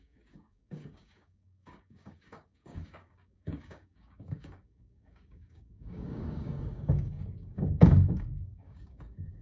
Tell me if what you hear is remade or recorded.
remade